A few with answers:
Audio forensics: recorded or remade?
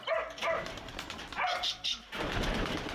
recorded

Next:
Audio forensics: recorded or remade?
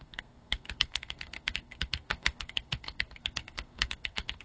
remade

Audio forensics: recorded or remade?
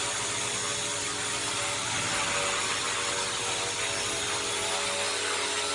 recorded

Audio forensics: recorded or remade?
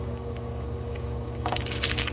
remade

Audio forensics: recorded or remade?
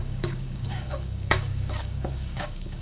remade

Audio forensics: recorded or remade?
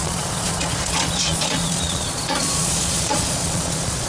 remade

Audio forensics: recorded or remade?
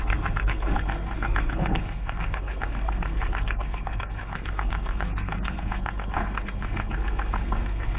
remade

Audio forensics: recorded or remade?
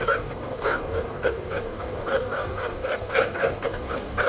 remade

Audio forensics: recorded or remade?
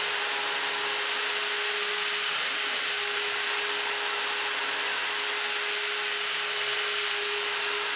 recorded